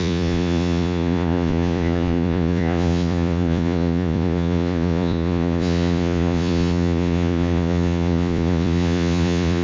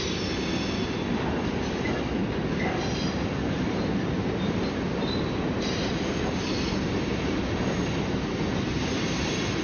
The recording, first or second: second